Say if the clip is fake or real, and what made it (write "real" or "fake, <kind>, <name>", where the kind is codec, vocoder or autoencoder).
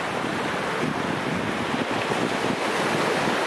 real